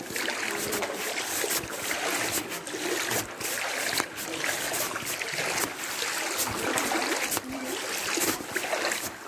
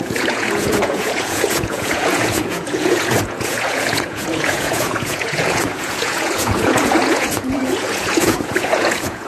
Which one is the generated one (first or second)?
second